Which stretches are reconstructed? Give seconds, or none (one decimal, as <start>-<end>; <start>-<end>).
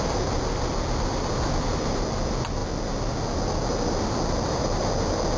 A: none